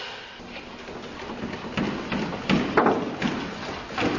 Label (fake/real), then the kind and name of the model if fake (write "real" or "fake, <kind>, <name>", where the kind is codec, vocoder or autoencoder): real